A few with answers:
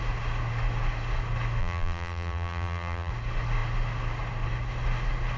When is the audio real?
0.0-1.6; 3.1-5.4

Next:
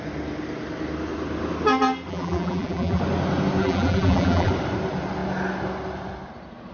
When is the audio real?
0.0-2.1; 3.0-3.6; 4.5-6.7

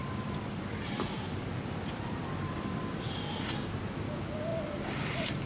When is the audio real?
3.3-4.5

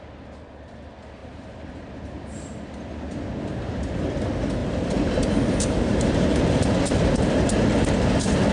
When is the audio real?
0.0-1.2; 1.7-4.6; 6.6-8.5

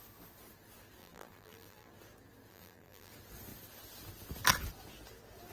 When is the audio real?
0.0-1.0; 1.9-2.5; 3.1-5.5

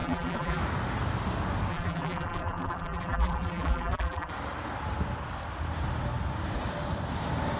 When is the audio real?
0.6-1.7; 4.3-7.6

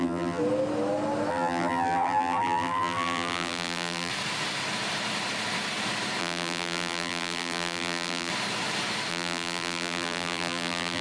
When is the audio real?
0.4-1.3; 4.1-6.2; 8.3-9.1

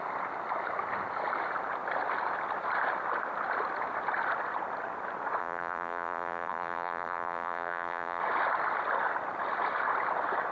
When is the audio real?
0.0-5.4; 8.2-10.5